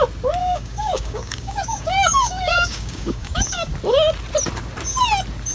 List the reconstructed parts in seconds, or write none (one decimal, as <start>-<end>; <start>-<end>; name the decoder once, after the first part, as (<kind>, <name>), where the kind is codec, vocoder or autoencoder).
0.4-3.7 (codec, DAC)